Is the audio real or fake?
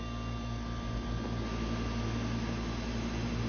real